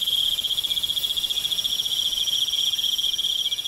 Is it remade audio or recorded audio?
recorded